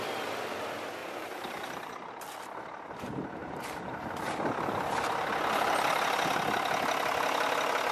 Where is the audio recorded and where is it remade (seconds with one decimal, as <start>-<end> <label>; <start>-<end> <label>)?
0.0-1.0 recorded; 1.0-2.1 remade; 2.1-3.4 recorded; 3.4-4.1 remade; 4.1-7.9 recorded